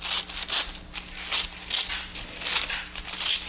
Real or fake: real